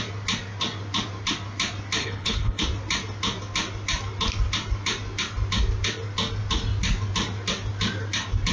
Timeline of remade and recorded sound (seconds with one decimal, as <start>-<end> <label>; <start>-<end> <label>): 0.0-2.0 recorded; 2.0-2.6 remade; 2.6-8.5 recorded